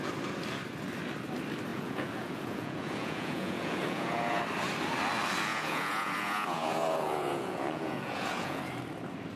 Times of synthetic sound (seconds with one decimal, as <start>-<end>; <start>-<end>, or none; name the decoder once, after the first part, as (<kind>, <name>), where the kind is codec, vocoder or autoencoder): 1.7-4.4 (vocoder, Vocos); 5.5-8.6